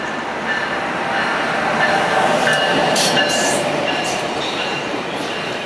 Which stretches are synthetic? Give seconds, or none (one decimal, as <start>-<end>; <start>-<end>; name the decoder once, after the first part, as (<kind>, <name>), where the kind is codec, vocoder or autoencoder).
2.8-5.7 (vocoder, BigVGAN v2)